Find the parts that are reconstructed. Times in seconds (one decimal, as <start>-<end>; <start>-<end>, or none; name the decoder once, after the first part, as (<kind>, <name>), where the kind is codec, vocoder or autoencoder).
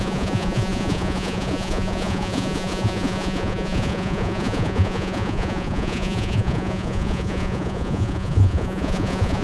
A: 0.0-9.4 (vocoder, Vocos)